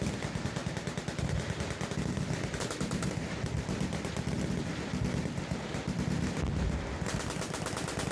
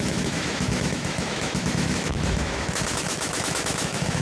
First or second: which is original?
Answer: first